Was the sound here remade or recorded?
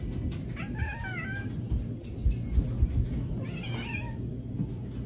recorded